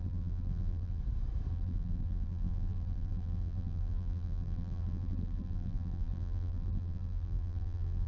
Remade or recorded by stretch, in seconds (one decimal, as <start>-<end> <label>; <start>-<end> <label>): 0.0-1.0 remade; 1.0-1.5 recorded; 1.5-8.1 remade